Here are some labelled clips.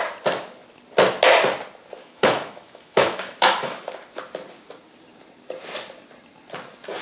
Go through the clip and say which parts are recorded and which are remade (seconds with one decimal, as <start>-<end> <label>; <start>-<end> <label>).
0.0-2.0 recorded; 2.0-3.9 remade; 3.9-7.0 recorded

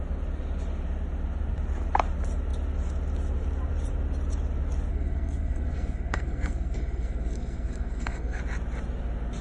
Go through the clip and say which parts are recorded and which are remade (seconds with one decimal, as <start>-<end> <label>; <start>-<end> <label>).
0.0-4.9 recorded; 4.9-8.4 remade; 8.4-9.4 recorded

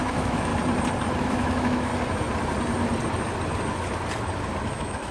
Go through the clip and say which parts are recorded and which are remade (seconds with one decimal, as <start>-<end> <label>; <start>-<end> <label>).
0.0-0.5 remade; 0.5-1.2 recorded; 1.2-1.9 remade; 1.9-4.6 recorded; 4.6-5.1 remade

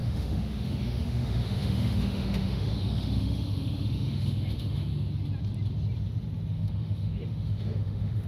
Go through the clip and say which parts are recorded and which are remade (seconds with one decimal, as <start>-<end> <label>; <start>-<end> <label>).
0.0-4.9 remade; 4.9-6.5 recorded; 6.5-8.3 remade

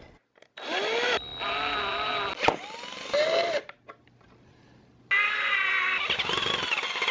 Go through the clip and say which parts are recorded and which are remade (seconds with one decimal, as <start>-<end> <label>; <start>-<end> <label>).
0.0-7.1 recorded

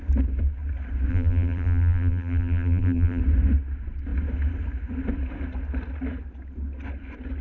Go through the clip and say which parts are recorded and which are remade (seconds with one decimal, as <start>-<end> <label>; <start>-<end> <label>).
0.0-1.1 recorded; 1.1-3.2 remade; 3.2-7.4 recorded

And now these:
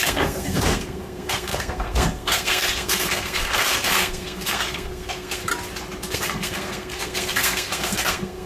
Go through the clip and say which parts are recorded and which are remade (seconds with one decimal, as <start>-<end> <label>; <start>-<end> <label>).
0.0-5.5 remade; 5.5-6.1 recorded; 6.1-8.5 remade